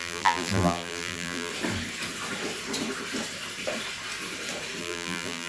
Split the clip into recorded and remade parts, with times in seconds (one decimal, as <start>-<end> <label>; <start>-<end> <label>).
0.0-1.5 remade; 1.5-4.8 recorded; 4.8-5.5 remade